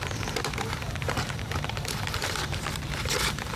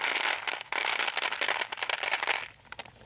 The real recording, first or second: second